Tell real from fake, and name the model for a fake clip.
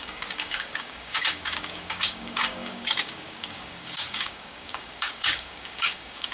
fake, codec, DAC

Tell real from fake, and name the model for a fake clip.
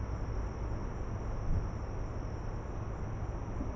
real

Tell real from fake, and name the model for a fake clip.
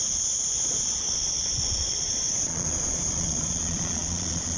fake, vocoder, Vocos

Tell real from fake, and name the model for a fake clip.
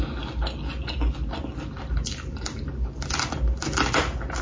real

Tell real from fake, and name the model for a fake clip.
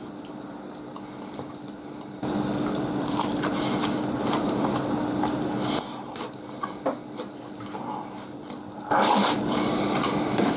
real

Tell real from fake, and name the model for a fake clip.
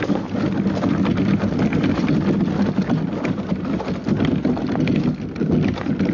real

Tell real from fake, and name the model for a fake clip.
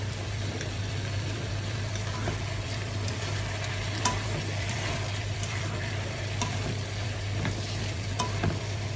fake, vocoder, BigVGAN v2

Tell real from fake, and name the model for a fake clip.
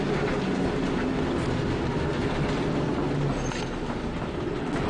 real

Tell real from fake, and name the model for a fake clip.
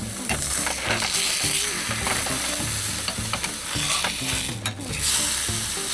real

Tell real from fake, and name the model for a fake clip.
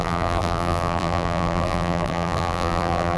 fake, vocoder, BigVGAN v2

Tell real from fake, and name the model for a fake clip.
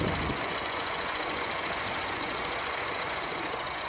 fake, vocoder, Vocos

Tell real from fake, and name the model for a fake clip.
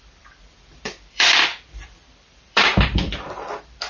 fake, vocoder, BigVGAN v2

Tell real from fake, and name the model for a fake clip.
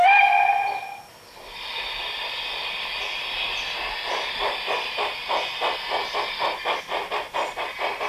real